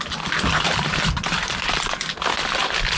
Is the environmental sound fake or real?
real